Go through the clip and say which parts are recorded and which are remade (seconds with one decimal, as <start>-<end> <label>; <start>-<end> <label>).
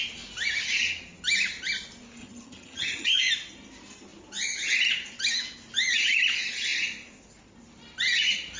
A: 0.0-2.2 recorded; 2.2-3.2 remade; 3.2-8.6 recorded